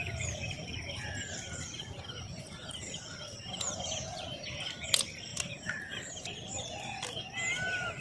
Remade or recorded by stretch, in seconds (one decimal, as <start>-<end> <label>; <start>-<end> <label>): 0.0-2.6 recorded; 2.6-4.5 remade; 4.5-5.3 recorded; 5.3-6.3 remade; 6.3-8.0 recorded